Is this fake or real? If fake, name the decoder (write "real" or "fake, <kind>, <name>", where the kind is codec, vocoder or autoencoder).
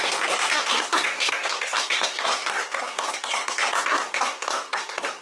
fake, codec, SNAC